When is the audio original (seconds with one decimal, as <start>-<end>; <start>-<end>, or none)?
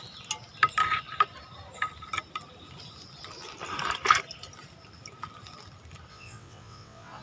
0.0-6.1